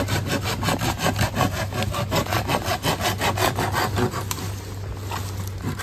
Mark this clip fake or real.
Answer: real